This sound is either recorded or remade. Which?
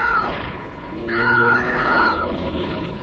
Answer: remade